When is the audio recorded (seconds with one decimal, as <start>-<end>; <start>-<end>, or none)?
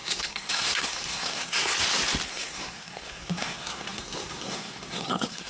1.8-2.3